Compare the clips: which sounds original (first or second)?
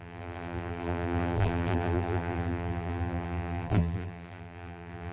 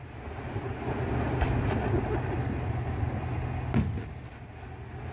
second